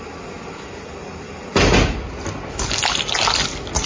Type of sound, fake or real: real